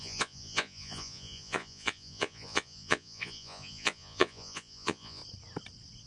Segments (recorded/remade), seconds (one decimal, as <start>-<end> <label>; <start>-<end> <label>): 0.0-5.2 remade; 5.2-6.1 recorded